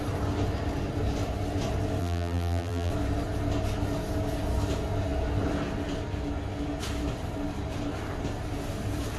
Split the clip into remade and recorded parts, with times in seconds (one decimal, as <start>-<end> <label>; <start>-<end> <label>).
0.0-2.0 recorded; 2.0-2.9 remade; 2.9-9.2 recorded